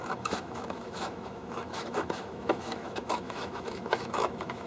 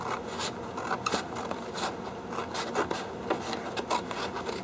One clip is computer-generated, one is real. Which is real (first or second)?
second